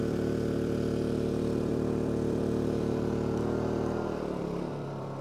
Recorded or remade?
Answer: remade